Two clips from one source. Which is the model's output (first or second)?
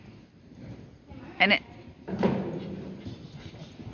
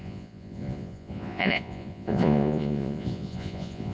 second